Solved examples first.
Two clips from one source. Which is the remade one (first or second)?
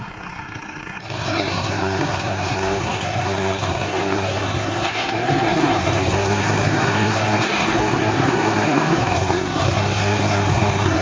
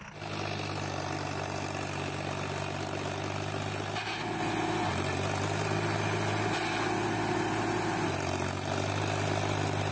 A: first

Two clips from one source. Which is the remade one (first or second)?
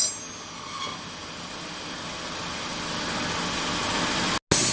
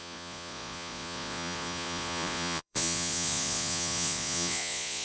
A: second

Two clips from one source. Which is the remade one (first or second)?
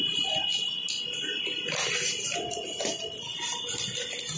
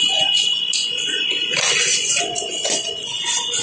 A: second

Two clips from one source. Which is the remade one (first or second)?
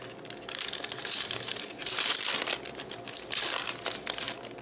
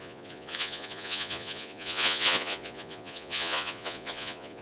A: second